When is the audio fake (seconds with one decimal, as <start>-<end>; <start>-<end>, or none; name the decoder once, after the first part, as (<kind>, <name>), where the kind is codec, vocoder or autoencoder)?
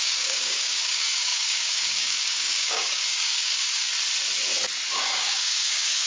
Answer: 0.0-3.9 (codec, DAC); 5.1-6.1